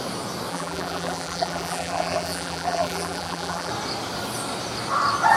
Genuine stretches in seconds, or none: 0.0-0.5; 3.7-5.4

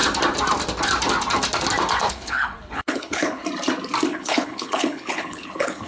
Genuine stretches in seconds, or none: 0.0-2.1; 3.4-4.1